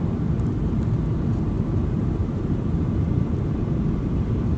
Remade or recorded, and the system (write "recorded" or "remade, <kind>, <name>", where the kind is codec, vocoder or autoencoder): remade, vocoder, BigVGAN v2